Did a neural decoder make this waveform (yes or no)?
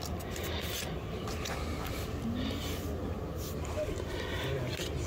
no